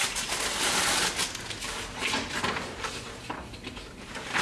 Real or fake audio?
real